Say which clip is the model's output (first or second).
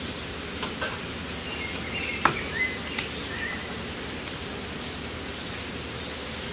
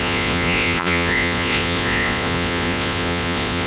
second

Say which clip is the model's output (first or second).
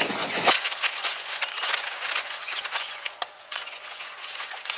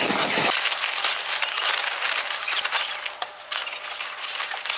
first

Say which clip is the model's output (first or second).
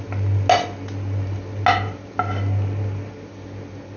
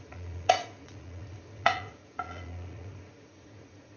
second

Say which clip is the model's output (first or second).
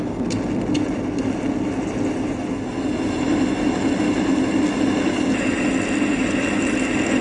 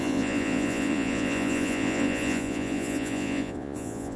second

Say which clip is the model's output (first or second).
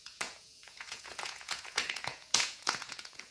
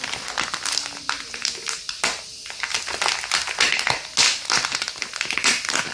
first